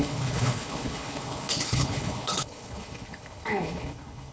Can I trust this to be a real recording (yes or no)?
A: no